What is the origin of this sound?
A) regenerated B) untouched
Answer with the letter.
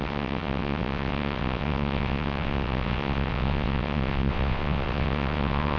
A